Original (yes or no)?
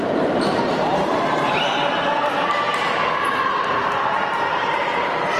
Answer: no